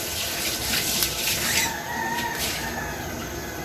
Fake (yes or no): no